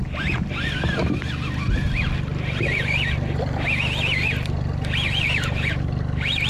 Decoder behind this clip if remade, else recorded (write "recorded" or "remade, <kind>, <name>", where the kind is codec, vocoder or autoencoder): recorded